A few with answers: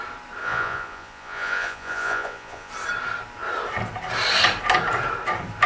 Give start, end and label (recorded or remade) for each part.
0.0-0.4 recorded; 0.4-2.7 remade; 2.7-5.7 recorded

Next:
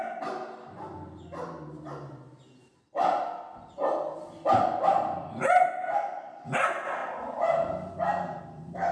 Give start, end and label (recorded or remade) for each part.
0.0-8.9 recorded

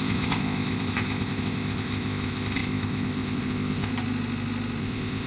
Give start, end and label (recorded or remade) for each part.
0.0-3.9 remade; 3.9-4.8 recorded; 4.8-5.3 remade

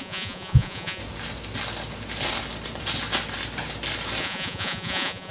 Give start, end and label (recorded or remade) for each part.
0.0-1.0 remade; 1.0-4.2 recorded; 4.2-5.3 remade

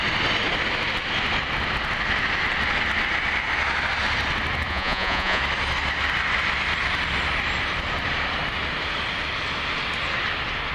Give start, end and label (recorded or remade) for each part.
0.0-4.7 recorded; 4.7-5.4 remade; 5.4-10.7 recorded

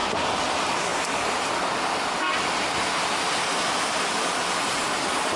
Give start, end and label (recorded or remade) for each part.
0.0-5.4 recorded

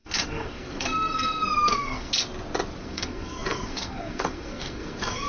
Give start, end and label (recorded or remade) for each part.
0.0-2.1 remade; 2.1-2.8 recorded; 2.8-5.3 remade

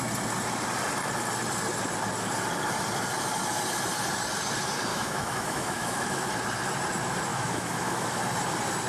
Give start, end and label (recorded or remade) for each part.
0.0-4.9 recorded; 4.9-6.3 remade; 6.3-7.3 recorded; 7.3-8.2 remade; 8.2-8.9 recorded